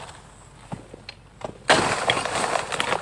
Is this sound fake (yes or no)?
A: no